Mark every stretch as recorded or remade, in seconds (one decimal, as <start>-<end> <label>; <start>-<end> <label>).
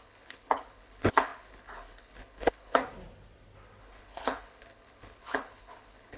0.0-2.8 remade; 2.8-3.8 recorded; 3.8-6.2 remade